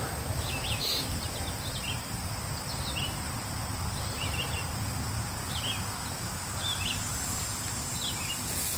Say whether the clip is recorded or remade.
recorded